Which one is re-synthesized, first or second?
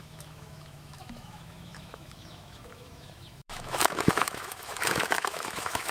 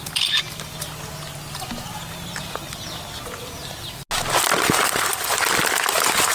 first